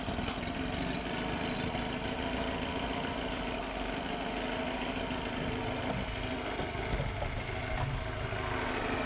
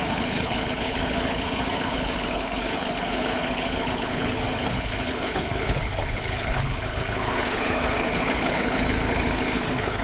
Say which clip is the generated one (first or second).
second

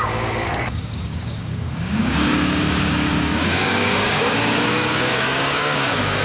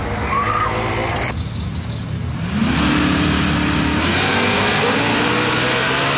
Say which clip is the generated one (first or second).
first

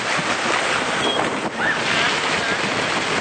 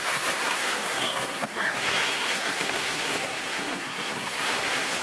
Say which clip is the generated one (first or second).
second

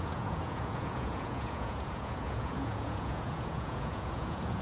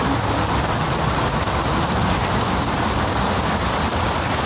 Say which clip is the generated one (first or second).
first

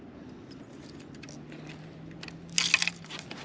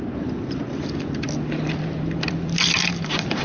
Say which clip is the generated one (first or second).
second